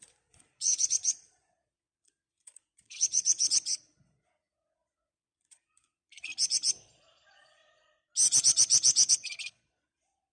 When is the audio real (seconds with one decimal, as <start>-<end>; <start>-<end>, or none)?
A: 6.3-6.8; 7.6-9.1